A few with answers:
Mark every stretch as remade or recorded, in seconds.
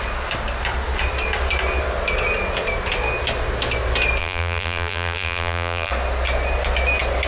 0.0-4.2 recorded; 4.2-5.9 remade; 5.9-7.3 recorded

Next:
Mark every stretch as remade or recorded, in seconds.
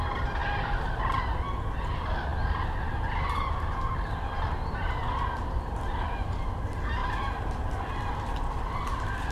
0.0-9.3 recorded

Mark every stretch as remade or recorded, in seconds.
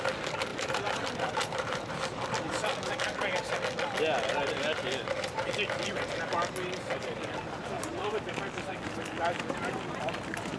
0.0-0.5 recorded; 0.5-1.9 remade; 1.9-7.9 recorded; 7.9-8.4 remade; 8.4-10.6 recorded